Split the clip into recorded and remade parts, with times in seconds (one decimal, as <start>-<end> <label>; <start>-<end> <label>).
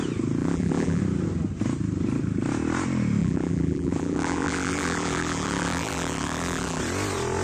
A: 0.0-0.4 recorded; 0.4-1.0 remade; 1.0-3.2 recorded; 3.2-6.8 remade; 6.8-7.4 recorded